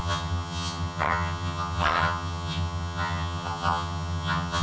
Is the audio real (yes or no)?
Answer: no